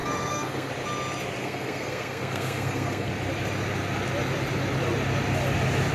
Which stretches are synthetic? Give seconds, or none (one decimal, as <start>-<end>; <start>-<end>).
0.0-0.7; 1.4-3.1